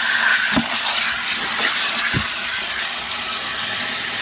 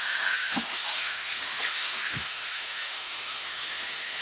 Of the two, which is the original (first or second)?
first